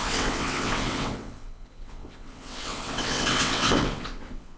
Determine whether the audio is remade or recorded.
remade